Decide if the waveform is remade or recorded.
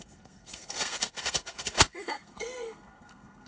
remade